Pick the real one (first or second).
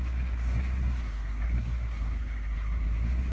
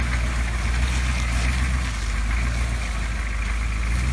second